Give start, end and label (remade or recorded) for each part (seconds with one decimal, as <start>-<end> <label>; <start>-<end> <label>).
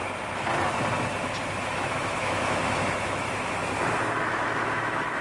0.0-1.6 recorded; 1.6-3.6 remade; 3.6-4.3 recorded; 4.3-5.2 remade